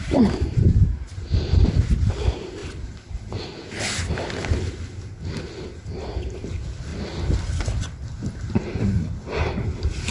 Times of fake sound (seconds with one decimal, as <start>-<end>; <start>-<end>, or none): 2.6-3.2; 6.9-9.5